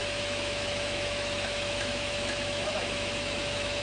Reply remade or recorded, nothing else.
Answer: remade